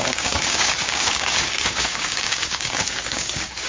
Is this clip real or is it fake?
fake